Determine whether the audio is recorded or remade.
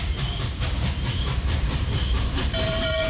remade